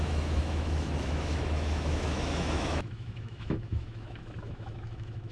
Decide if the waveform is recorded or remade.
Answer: remade